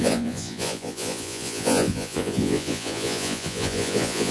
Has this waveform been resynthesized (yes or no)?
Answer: yes